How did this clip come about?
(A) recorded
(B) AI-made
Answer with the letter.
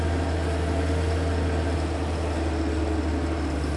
A